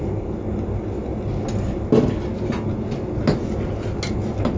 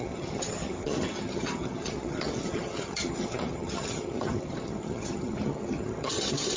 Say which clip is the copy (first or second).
second